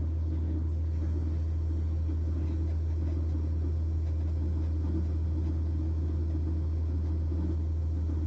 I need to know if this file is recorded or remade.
recorded